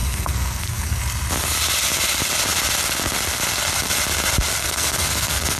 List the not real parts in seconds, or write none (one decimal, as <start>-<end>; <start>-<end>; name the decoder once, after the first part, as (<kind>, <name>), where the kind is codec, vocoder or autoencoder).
0.0-1.0 (codec, SNAC); 4.6-5.6